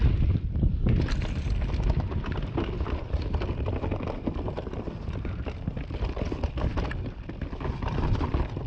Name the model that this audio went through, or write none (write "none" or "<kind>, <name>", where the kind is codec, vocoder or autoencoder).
none